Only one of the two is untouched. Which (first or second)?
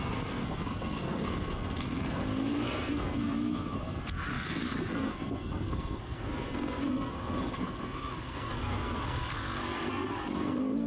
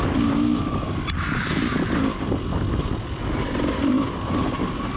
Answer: second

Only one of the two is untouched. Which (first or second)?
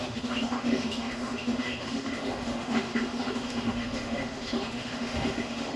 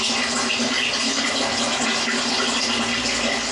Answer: second